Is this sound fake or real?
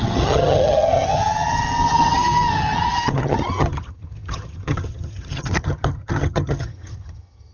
fake